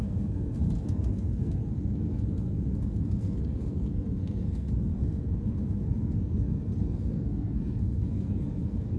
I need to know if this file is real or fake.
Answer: fake